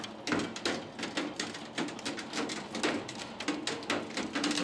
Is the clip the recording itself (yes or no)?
yes